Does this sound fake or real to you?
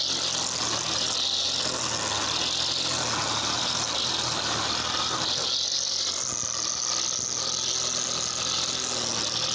real